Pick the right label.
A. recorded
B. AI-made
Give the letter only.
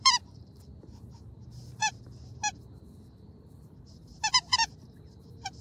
B